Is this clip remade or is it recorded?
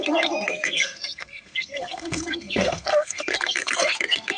remade